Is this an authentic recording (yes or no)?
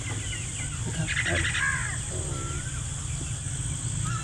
yes